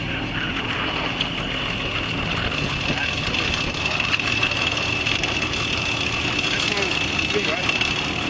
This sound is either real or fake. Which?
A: real